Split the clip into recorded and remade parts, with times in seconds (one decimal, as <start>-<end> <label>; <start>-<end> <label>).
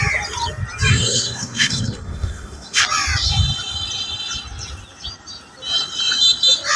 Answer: 0.0-0.9 recorded; 0.9-2.8 remade; 2.8-6.8 recorded